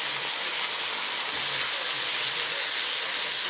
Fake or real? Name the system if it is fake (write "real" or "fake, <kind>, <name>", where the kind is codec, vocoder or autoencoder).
real